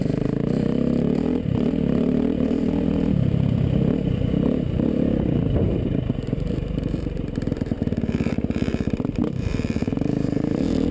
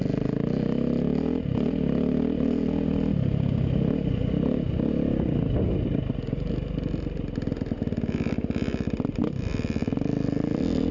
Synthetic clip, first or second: first